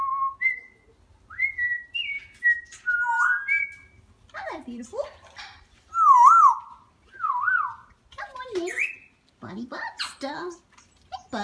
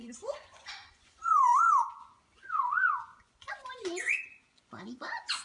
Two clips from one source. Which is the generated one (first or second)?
second